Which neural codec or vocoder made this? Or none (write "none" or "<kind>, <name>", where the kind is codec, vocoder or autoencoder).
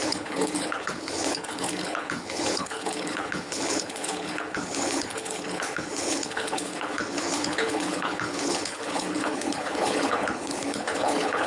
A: codec, HILCodec